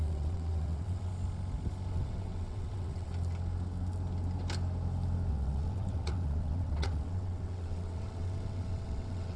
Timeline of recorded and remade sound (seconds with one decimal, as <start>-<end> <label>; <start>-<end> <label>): 0.0-1.1 remade; 1.1-1.9 recorded; 1.9-3.1 remade; 3.1-5.3 recorded; 5.3-9.4 remade